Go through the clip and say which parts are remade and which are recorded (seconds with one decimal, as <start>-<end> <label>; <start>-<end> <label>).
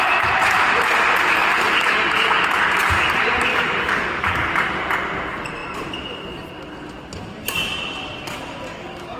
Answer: 0.0-3.5 recorded; 3.5-4.5 remade; 4.5-8.7 recorded; 8.7-9.2 remade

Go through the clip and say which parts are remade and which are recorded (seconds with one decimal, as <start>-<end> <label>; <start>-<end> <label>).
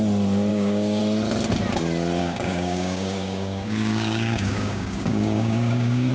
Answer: 0.0-0.5 recorded; 0.5-1.0 remade; 1.0-2.2 recorded; 2.2-6.1 remade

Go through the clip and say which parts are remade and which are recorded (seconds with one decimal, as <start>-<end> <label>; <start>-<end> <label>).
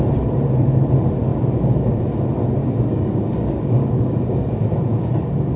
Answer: 0.0-1.3 recorded; 1.3-2.0 remade; 2.0-2.6 recorded; 2.6-5.1 remade; 5.1-5.6 recorded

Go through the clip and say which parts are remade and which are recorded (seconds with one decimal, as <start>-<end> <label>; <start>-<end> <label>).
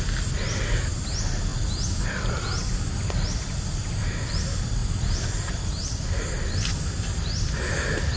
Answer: 0.0-8.2 recorded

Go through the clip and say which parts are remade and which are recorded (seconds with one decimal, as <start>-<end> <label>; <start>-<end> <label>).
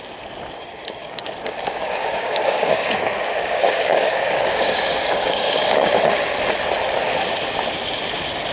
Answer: 0.0-1.0 recorded; 1.0-5.9 remade; 5.9-8.5 recorded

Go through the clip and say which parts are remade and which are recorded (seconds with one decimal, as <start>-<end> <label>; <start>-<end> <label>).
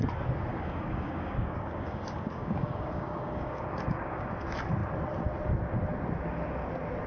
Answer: 0.0-0.5 recorded; 0.5-4.3 remade; 4.3-7.1 recorded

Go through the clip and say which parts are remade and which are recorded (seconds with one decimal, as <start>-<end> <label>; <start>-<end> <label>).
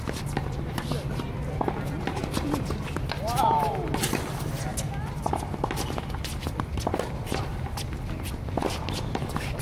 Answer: 0.0-9.6 recorded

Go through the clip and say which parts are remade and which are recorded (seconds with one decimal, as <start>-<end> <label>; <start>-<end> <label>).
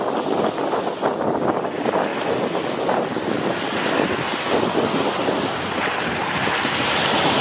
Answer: 0.0-7.4 recorded